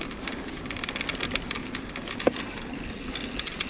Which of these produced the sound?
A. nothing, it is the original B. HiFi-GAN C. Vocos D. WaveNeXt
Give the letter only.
A